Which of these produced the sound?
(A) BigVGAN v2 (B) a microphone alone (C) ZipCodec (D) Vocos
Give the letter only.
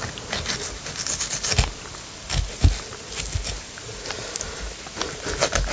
B